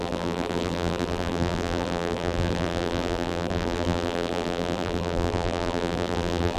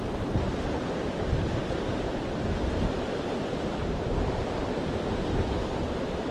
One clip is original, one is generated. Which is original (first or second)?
second